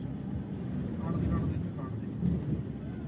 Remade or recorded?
recorded